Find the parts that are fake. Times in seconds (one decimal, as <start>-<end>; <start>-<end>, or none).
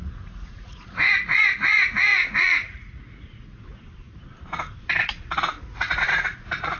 0.0-3.8; 5.0-6.8